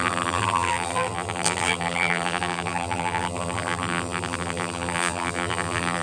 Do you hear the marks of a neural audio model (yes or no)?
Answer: yes